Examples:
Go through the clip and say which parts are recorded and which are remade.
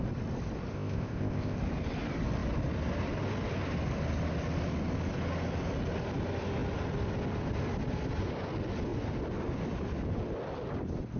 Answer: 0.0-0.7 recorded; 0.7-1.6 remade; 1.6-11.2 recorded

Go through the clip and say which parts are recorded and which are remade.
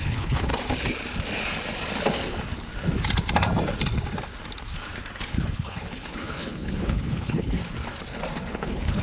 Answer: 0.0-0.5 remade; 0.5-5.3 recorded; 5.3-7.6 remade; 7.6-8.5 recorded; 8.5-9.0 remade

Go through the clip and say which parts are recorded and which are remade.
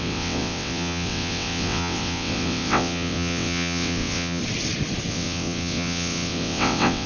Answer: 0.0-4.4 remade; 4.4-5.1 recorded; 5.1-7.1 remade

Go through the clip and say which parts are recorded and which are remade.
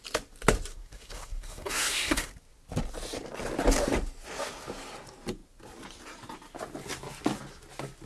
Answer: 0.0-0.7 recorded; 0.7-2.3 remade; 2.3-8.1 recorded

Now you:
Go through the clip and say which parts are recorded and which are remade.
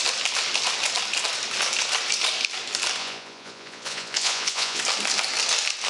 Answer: 0.0-3.0 recorded; 3.0-4.8 remade; 4.8-5.9 recorded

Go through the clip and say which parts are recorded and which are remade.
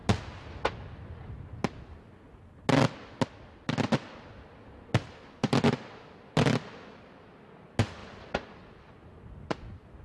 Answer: 0.0-10.0 recorded